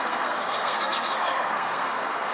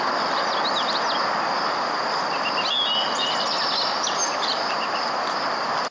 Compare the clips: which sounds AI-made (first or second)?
first